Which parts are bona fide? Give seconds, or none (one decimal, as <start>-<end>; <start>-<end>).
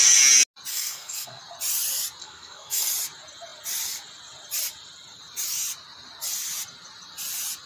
0.0-0.7; 1.4-2.2; 2.9-7.7